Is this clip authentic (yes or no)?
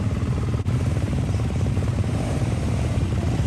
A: no